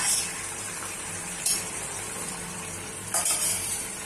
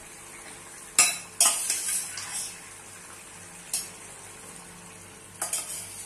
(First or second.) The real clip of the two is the second